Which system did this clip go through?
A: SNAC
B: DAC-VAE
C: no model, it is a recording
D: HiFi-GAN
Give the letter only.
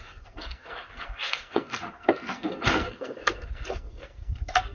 A